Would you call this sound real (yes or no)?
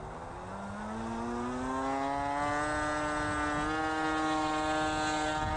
yes